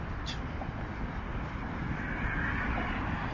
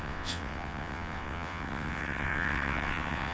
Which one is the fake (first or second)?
second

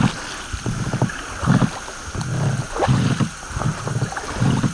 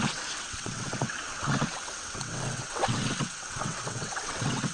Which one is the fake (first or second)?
second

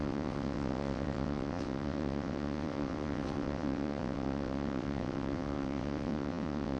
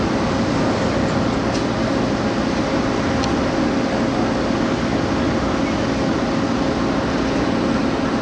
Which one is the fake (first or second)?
first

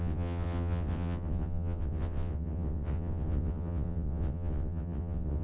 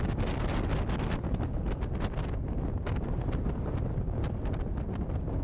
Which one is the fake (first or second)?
first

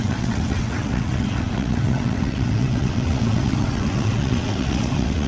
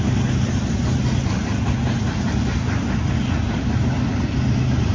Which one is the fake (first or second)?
first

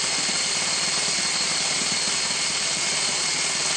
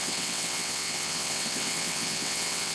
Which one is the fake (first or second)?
second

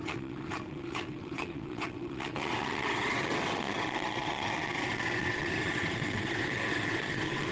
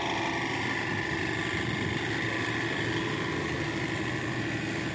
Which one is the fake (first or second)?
first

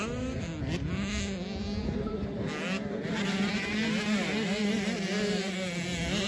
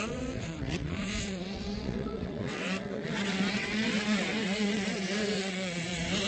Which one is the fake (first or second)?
second